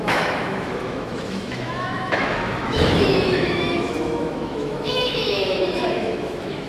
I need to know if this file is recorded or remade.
remade